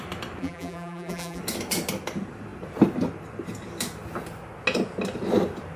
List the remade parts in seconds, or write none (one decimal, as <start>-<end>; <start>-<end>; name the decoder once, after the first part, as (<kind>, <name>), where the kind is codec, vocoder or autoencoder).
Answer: 0.4-1.4 (vocoder, BigVGAN v2)